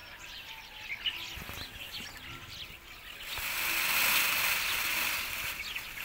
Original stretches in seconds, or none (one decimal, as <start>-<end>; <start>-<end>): 0.8-6.0